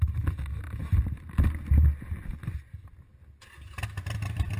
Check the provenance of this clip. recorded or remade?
recorded